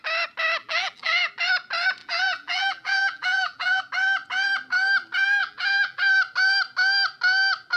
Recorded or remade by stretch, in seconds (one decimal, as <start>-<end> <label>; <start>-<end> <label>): 0.0-0.6 recorded; 0.6-1.2 remade; 1.2-2.0 recorded; 2.0-3.8 remade; 3.8-5.4 recorded; 5.4-6.0 remade; 6.0-7.8 recorded